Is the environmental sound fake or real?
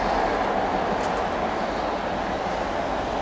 real